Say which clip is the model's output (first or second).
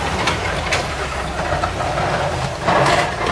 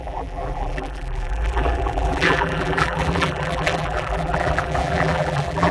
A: second